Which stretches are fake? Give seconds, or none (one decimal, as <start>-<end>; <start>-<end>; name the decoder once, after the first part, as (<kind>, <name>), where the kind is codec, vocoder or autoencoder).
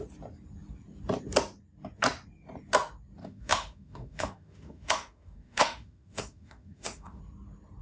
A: 3.2-7.2 (autoencoder, DAC-VAE)